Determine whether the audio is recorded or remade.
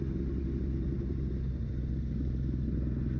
recorded